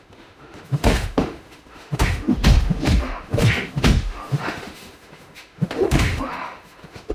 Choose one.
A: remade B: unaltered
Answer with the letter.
A